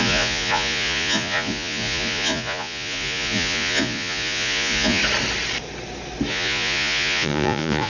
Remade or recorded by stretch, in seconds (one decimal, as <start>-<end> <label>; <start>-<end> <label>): 0.0-5.0 remade; 5.0-6.3 recorded; 6.3-7.9 remade